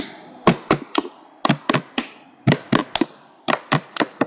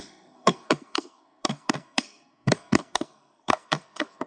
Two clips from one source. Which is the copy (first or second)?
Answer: second